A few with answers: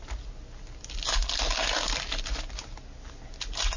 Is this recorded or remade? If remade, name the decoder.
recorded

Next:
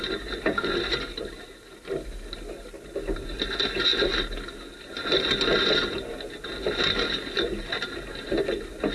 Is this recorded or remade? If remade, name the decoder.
recorded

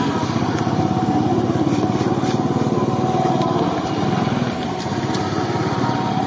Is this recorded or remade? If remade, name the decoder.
recorded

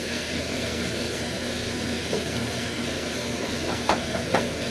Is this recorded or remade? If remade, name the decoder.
remade, codec, SNAC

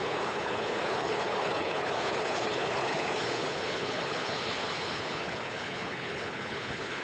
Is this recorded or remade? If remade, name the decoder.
remade, codec, HILCodec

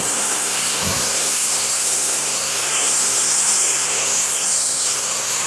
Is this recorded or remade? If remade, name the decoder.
remade, codec, SNAC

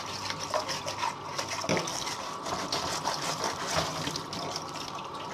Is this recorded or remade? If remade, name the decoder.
recorded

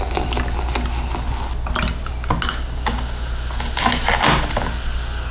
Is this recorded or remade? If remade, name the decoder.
recorded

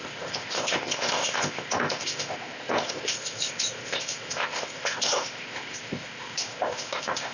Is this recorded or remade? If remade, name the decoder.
remade, codec, ZipCodec